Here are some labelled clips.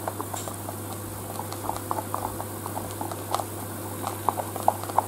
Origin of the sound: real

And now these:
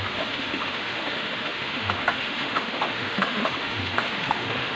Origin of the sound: fake